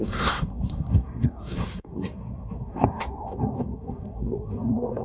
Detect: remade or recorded remade